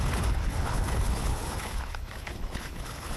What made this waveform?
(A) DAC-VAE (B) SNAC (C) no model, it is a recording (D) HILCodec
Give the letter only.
D